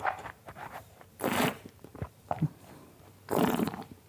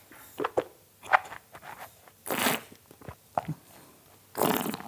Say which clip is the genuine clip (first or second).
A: second